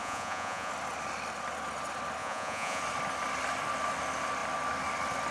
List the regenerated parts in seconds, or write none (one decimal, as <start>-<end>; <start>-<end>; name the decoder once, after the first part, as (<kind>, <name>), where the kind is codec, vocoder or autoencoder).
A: 0.0-0.7 (vocoder, Vocos); 2.2-2.8